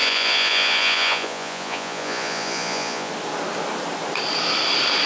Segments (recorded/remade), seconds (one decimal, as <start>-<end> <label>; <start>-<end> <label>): 0.0-3.1 remade; 3.1-5.1 recorded